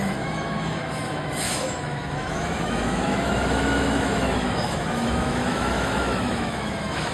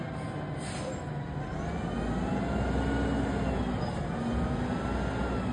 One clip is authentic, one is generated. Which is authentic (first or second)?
second